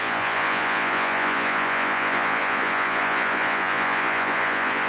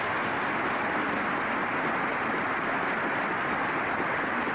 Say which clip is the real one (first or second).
second